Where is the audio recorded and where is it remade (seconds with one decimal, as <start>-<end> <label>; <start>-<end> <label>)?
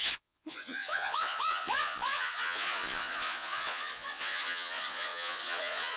0.0-6.0 remade